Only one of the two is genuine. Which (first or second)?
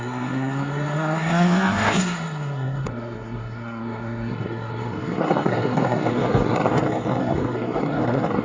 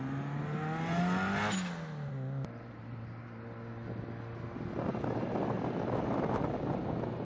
second